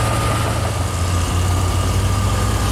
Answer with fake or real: real